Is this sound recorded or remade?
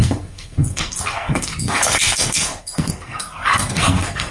remade